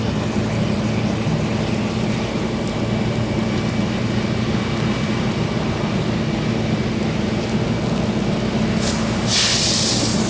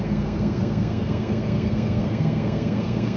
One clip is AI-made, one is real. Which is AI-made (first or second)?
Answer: second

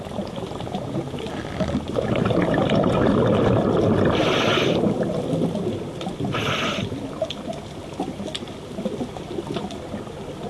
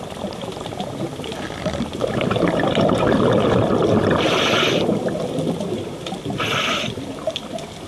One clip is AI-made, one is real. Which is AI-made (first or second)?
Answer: second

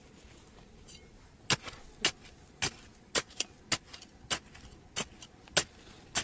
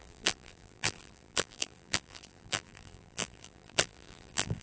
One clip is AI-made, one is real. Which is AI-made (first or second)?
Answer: second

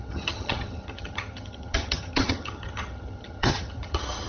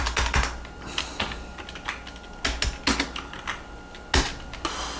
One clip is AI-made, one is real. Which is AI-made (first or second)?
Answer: first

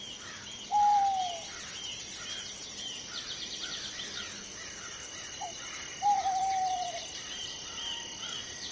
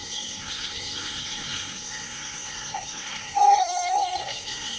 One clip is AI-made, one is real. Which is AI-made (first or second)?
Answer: second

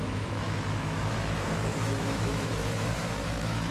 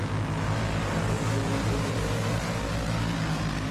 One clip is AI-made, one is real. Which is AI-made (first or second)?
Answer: first